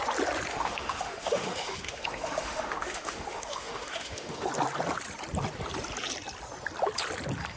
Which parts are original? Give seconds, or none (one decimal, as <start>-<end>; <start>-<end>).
0.0-0.5; 4.5-7.6